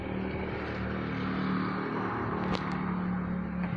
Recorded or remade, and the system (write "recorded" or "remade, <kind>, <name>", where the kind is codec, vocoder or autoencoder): recorded